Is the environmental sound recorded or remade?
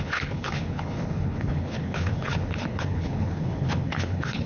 remade